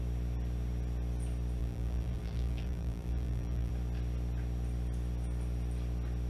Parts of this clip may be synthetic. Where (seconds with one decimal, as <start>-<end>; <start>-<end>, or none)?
1.6-3.7